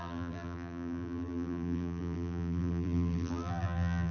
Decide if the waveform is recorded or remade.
remade